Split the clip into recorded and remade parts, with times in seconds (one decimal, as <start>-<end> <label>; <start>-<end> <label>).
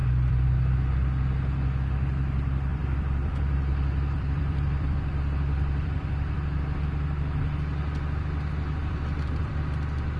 0.0-0.5 remade; 0.5-2.7 recorded; 2.7-6.6 remade; 6.6-8.8 recorded; 8.8-9.5 remade; 9.5-10.2 recorded